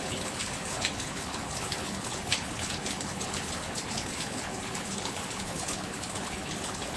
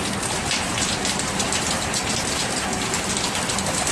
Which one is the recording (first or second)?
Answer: second